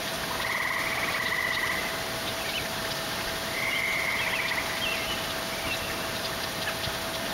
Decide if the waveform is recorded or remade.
remade